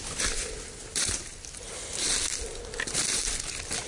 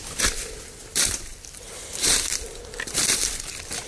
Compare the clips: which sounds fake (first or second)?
second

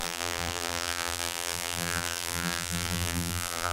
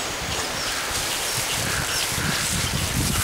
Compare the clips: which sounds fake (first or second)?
first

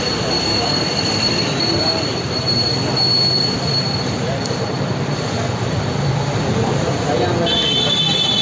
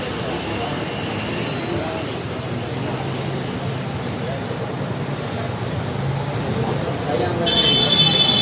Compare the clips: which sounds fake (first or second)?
first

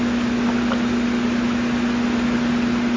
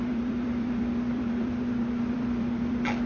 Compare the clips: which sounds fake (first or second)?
second